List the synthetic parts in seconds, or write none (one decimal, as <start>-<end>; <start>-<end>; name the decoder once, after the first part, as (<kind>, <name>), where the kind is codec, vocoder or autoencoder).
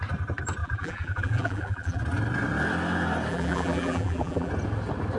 0.6-2.0 (vocoder, BigVGAN v2); 3.3-4.5